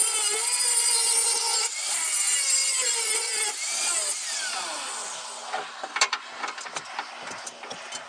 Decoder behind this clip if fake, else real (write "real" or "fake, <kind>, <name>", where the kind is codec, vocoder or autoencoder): real